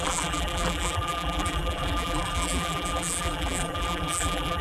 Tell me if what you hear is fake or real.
fake